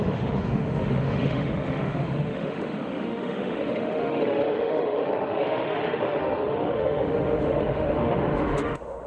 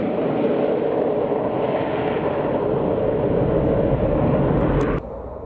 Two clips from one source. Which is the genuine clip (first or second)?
second